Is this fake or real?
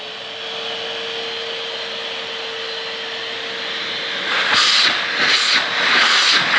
real